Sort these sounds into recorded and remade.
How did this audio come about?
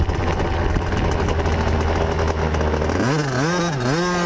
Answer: recorded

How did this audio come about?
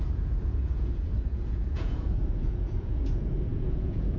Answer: remade